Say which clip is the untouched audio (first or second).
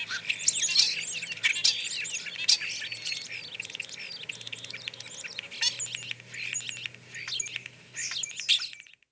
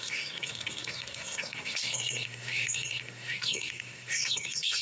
first